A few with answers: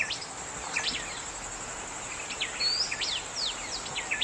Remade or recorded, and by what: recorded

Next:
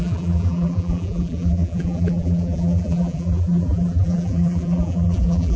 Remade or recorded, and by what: remade, vocoder, BigVGAN v2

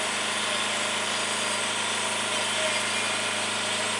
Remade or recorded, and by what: recorded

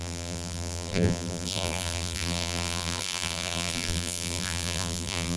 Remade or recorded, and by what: remade, vocoder, BigVGAN v2